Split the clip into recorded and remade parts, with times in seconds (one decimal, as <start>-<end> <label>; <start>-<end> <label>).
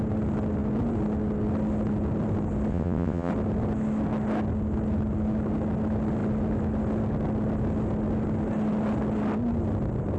0.0-2.7 recorded; 2.7-3.3 remade; 3.3-10.2 recorded